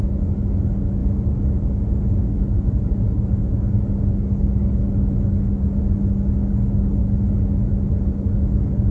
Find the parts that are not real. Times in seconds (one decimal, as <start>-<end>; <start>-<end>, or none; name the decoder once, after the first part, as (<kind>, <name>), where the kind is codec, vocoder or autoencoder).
none